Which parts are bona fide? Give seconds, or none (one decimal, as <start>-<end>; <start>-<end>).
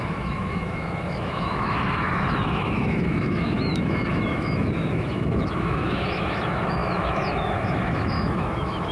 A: none